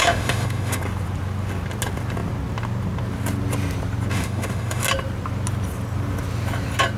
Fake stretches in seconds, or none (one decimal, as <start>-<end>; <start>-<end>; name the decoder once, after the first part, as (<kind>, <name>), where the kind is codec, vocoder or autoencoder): 0.0-0.8 (autoencoder, DAC-VAE); 4.1-4.8